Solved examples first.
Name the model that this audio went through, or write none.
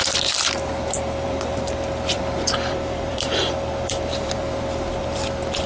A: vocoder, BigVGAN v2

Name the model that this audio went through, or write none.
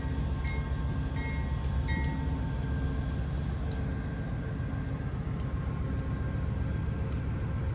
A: none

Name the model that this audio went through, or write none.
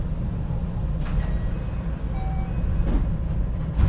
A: none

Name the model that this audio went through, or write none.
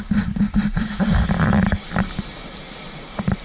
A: vocoder, BigVGAN v2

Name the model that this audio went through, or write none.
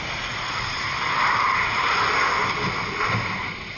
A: none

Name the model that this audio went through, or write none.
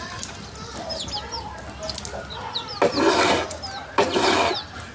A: none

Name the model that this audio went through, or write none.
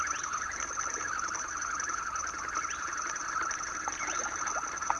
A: none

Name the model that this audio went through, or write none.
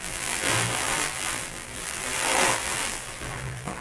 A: vocoder, BigVGAN v2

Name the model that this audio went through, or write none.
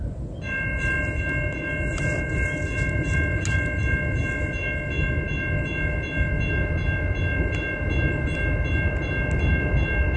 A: none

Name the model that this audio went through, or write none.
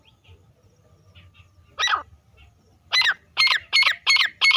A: vocoder, BigVGAN v2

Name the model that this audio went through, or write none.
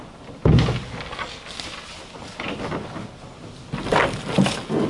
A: none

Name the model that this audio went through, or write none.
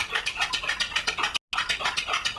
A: none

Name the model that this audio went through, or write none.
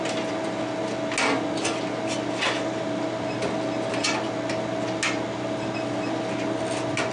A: none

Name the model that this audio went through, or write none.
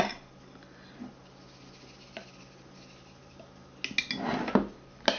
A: none